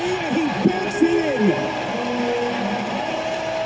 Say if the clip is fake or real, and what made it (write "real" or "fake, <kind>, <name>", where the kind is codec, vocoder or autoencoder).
real